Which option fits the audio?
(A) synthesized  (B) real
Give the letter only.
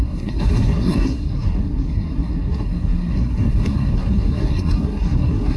A